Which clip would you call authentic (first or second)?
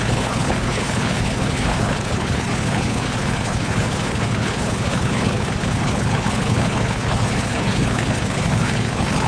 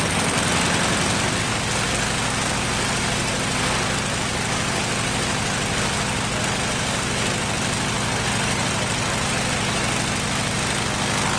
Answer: second